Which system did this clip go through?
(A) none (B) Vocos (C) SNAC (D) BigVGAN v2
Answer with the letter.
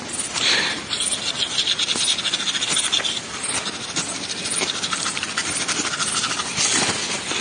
A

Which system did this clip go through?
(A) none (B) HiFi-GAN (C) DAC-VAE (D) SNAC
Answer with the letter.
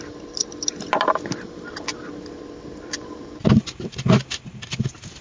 A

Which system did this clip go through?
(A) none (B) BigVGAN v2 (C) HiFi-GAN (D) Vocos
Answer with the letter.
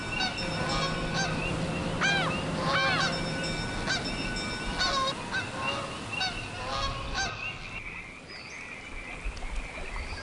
A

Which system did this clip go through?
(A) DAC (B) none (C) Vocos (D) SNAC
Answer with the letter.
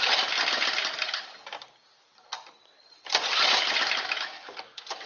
B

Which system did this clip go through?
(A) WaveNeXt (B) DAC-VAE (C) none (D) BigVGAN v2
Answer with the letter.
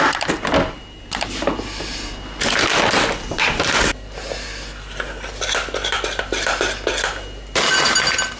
C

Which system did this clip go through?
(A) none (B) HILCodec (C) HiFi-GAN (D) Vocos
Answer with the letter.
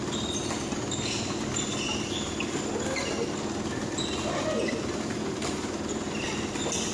A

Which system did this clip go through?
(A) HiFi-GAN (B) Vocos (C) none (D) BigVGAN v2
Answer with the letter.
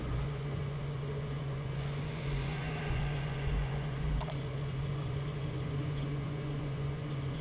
B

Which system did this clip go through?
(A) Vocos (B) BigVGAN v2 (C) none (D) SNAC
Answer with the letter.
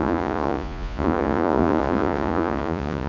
A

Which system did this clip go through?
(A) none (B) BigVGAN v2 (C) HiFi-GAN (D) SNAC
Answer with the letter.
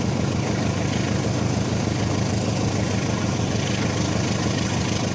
A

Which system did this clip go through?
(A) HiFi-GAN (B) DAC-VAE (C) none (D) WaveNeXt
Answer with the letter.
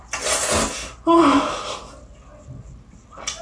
C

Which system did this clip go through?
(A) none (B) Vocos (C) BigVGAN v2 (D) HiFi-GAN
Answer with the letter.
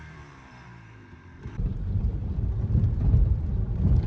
C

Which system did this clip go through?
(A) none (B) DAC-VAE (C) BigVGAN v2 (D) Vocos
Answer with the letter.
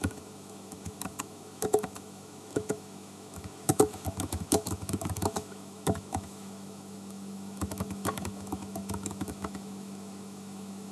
B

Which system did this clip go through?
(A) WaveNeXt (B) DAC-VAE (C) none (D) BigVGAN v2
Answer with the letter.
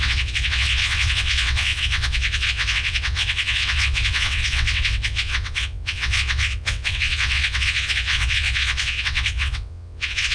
A